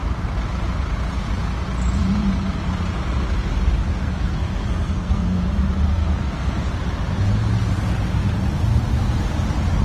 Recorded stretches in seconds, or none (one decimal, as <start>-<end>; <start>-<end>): 0.0-3.9; 5.4-5.9; 6.7-9.8

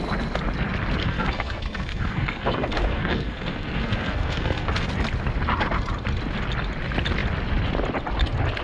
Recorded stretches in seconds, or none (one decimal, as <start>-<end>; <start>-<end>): 0.0-1.0; 4.9-8.6

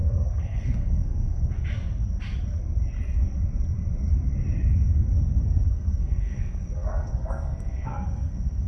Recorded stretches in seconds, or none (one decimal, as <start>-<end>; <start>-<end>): 1.5-5.4

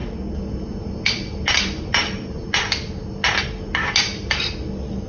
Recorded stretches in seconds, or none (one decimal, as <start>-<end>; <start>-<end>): 0.0-5.1

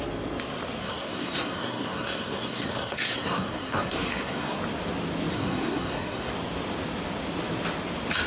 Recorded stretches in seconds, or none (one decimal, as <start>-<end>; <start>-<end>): 0.0-0.8; 4.6-5.3; 6.3-8.3

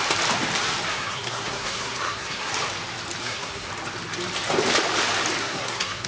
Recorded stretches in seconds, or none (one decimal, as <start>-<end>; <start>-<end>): 0.0-0.9; 2.5-3.2; 3.7-5.4